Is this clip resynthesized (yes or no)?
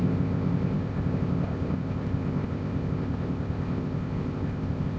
yes